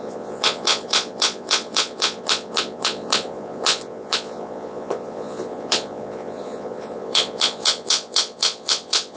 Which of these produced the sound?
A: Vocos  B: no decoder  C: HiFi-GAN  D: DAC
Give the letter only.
A